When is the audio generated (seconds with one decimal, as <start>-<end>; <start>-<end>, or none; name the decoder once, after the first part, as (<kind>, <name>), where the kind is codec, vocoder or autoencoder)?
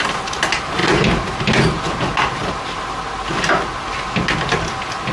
none